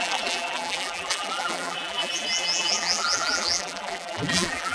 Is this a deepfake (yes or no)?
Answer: yes